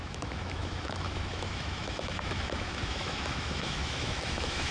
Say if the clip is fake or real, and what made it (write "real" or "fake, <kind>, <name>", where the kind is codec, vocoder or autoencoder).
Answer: fake, autoencoder, DAC-VAE